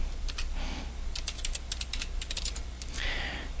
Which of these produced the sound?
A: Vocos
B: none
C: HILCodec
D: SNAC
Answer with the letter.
B